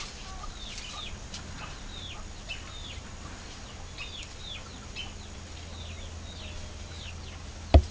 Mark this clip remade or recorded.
recorded